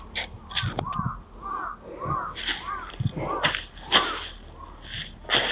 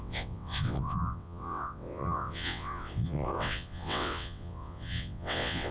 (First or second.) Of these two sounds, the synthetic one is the second